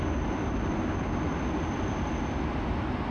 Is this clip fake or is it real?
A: real